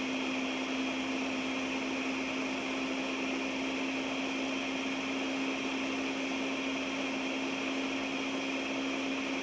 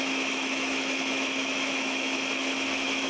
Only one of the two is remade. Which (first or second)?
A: second